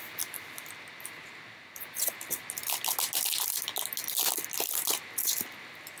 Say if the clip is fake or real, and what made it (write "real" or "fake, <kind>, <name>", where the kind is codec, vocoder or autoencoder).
real